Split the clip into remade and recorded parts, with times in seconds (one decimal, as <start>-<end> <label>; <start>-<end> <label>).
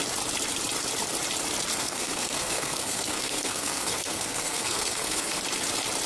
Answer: 0.0-1.7 recorded; 1.7-5.4 remade; 5.4-6.1 recorded